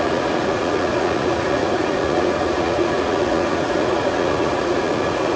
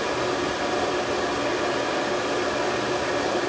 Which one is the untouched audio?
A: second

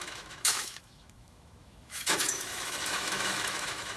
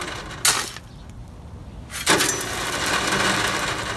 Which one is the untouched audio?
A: second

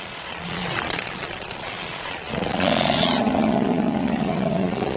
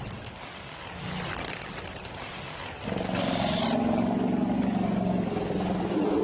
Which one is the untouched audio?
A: second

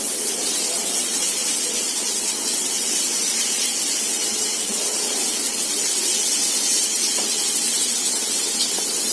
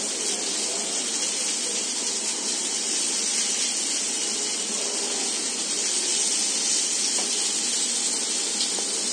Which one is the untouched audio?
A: second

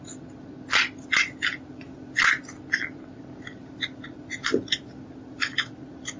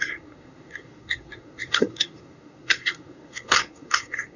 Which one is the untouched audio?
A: first